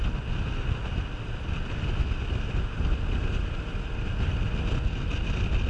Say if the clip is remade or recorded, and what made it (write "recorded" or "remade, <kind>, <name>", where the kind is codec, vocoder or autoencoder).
recorded